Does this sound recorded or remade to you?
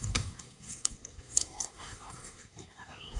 remade